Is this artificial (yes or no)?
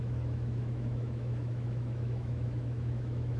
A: yes